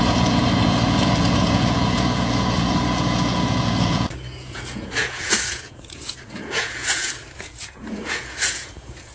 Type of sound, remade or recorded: remade